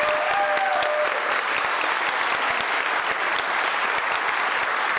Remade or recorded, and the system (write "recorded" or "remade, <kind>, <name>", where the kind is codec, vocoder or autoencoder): recorded